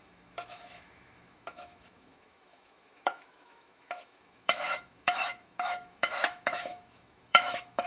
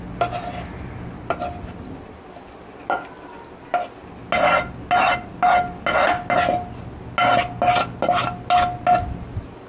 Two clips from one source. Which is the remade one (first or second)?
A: first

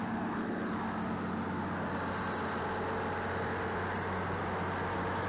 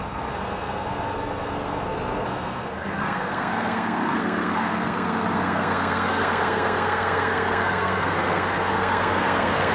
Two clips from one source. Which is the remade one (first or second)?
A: second